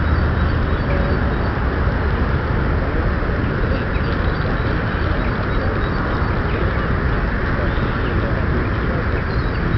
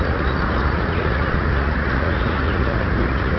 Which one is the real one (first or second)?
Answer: first